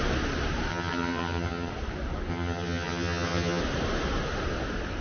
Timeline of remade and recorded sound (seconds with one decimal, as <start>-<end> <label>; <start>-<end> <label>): 0.0-0.7 recorded; 0.7-1.7 remade; 1.7-2.3 recorded; 2.3-3.6 remade; 3.6-5.0 recorded